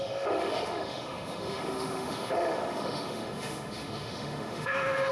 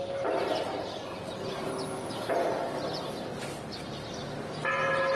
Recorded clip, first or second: second